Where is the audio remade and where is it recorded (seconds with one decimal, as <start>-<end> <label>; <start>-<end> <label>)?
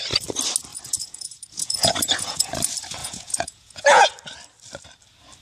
0.0-0.7 recorded; 0.7-2.5 remade; 2.5-3.0 recorded; 3.0-4.1 remade; 4.1-5.4 recorded